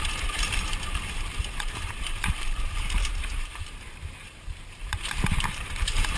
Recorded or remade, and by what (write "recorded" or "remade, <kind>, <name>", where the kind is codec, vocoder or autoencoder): remade, vocoder, BigVGAN v2